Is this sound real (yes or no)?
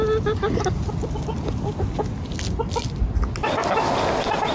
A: yes